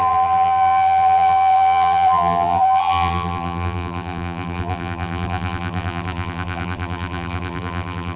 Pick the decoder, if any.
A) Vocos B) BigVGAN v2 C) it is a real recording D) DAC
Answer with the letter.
B